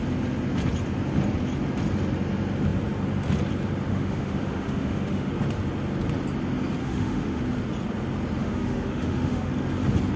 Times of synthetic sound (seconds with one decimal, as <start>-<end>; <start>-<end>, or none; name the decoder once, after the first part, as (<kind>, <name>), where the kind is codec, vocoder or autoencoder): 3.9-5.3 (autoencoder, DAC-VAE); 6.8-7.4; 8.4-9.5